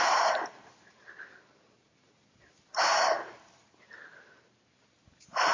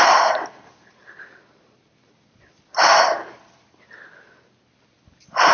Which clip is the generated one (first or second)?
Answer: first